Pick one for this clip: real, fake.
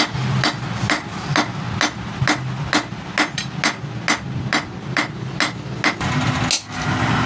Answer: real